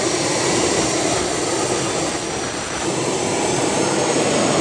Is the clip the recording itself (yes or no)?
yes